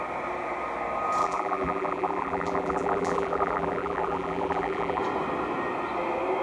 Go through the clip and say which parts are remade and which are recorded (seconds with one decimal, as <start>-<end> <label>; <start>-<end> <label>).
0.0-1.2 recorded; 1.2-5.0 remade; 5.0-6.4 recorded